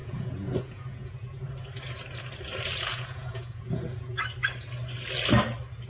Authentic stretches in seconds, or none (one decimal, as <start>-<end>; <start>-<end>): 1.5-2.9; 4.2-5.9